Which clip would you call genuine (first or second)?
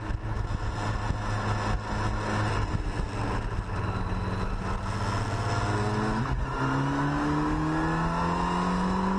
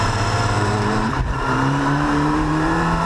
first